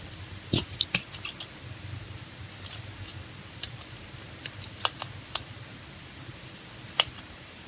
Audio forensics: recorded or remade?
remade